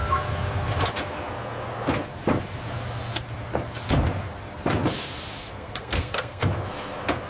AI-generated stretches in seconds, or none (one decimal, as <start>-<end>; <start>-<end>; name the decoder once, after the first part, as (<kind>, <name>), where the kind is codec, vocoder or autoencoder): 5.4-6.4 (codec, SNAC)